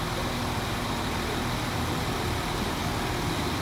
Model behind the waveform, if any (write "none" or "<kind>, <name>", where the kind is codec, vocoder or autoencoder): none